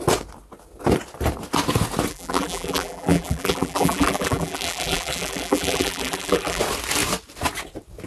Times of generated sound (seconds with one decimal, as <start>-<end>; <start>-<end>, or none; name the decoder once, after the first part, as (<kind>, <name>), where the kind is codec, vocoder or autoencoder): 2.1-6.6 (vocoder, BigVGAN v2)